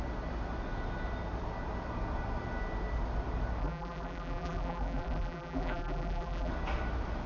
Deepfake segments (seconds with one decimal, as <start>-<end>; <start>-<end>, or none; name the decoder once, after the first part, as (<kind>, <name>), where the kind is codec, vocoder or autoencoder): 3.6-6.5 (vocoder, BigVGAN v2)

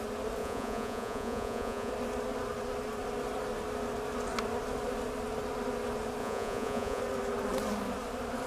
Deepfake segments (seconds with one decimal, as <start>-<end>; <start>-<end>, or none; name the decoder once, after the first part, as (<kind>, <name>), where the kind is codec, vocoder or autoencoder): 0.4-1.9 (vocoder, Vocos); 6.2-7.0